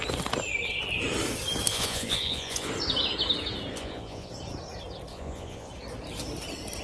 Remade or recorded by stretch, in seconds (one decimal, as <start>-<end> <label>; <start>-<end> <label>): 0.0-1.7 recorded; 1.7-2.7 remade; 2.7-3.7 recorded; 3.7-4.3 remade; 4.3-5.1 recorded; 5.1-5.7 remade; 5.7-6.8 recorded